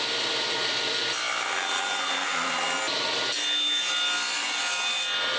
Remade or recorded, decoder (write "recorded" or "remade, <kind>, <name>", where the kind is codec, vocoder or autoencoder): recorded